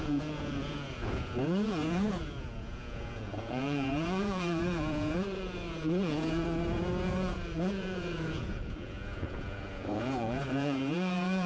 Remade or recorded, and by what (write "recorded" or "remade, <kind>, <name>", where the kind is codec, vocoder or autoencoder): remade, vocoder, Vocos